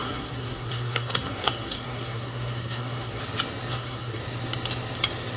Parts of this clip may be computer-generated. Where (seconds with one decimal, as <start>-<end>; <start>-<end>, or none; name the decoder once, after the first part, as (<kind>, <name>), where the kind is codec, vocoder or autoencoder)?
0.0-3.2 (codec, SNAC); 3.7-4.2